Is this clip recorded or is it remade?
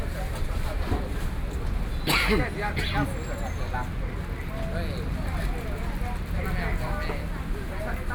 recorded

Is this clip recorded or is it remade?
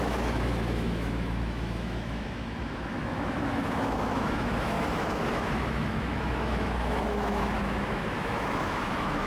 remade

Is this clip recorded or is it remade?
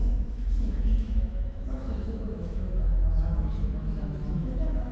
remade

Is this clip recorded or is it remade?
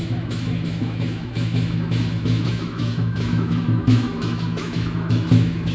remade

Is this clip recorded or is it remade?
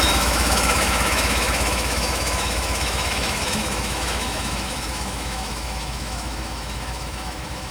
remade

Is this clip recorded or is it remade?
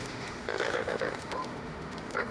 remade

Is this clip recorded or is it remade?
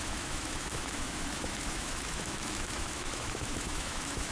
remade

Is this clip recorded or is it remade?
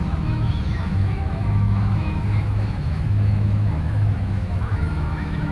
remade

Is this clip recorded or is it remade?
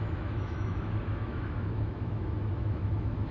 remade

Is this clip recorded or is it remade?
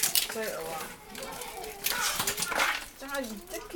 recorded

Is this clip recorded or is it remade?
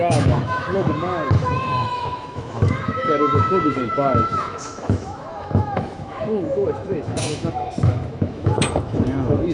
remade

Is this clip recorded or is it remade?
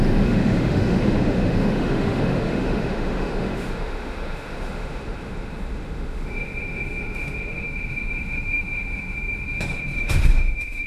remade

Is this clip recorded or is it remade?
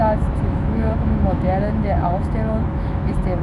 remade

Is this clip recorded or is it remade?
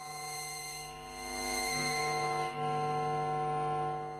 recorded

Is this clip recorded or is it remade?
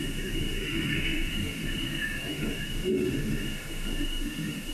remade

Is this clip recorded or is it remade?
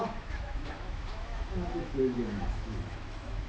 remade